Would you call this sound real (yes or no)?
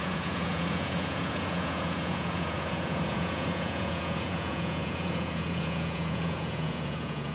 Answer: no